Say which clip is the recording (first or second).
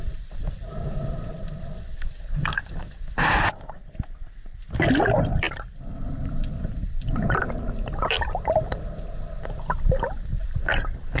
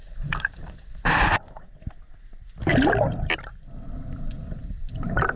second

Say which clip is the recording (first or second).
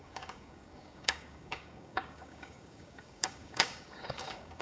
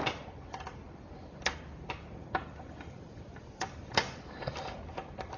second